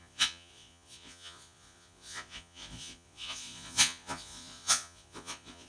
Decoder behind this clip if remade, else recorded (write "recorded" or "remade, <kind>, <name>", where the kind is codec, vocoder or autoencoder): remade, vocoder, Vocos